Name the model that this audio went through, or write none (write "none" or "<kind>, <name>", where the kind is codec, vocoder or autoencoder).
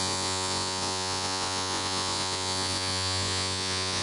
vocoder, Vocos